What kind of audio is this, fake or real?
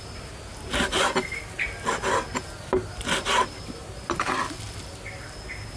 real